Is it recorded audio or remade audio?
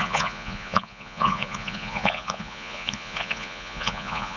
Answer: remade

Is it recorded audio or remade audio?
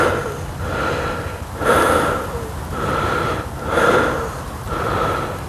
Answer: recorded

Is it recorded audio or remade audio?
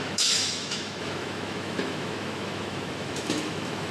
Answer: remade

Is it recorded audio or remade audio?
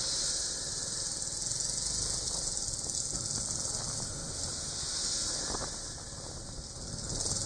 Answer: recorded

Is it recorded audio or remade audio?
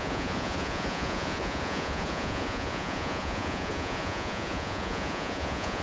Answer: remade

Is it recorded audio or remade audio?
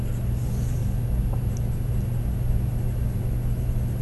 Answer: recorded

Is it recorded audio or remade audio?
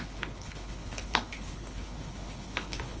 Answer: remade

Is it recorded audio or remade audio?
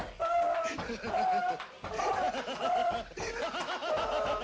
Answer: recorded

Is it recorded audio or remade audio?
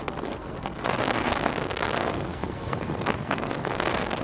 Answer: remade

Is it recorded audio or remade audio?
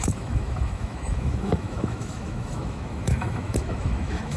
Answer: remade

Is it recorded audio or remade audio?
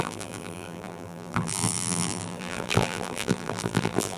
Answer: remade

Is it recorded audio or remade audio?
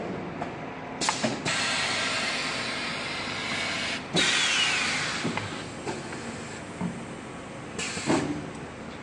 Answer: recorded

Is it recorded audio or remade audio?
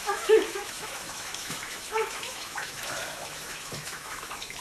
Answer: remade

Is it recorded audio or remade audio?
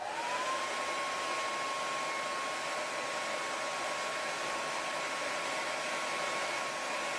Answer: recorded